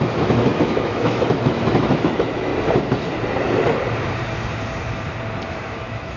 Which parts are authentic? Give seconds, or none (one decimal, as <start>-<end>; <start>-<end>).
2.5-5.5